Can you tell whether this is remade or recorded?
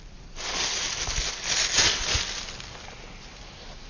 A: recorded